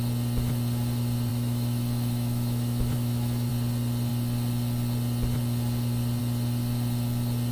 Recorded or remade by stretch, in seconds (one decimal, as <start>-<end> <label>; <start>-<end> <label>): 0.0-1.3 recorded; 1.3-3.5 remade; 3.5-7.5 recorded